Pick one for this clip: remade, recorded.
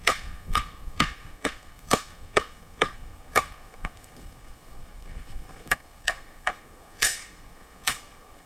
remade